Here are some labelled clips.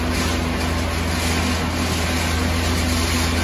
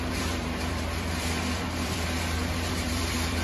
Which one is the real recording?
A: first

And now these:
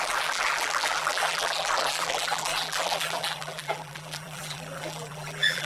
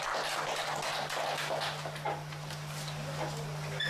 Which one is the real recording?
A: second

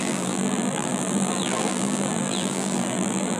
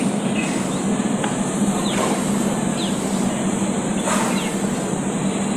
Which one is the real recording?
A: second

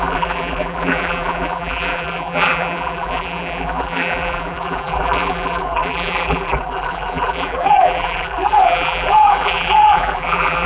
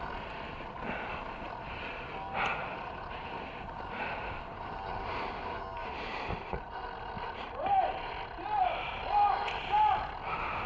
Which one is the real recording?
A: second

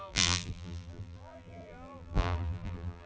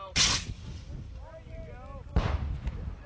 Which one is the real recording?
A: second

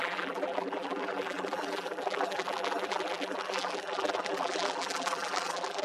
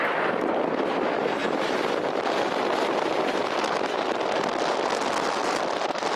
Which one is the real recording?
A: second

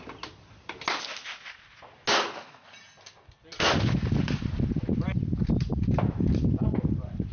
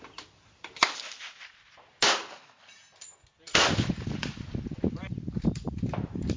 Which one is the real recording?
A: first